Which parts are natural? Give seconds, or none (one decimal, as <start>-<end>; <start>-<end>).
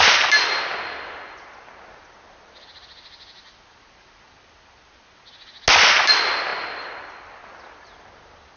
0.0-8.6